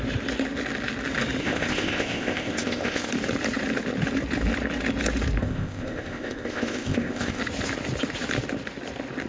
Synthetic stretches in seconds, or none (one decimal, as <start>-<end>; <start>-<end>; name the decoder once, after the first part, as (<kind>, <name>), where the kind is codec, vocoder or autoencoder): 1.4-3.1 (codec, ZipCodec); 5.4-7.4